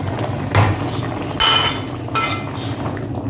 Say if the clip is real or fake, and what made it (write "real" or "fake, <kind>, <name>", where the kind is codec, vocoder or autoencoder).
real